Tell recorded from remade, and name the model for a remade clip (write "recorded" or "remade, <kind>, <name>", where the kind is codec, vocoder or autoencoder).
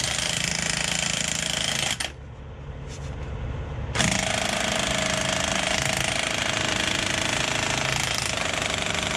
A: recorded